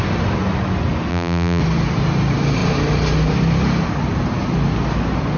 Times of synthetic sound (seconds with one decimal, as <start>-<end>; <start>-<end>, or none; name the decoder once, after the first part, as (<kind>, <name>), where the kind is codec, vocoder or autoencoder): 1.1-1.6 (vocoder, BigVGAN v2)